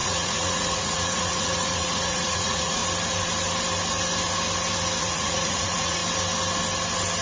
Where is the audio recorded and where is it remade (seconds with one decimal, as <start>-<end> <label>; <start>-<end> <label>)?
0.0-2.8 remade; 2.8-5.0 recorded; 5.0-6.0 remade; 6.0-7.2 recorded